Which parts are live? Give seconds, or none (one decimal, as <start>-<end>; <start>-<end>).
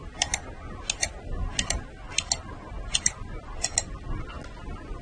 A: 0.0-5.0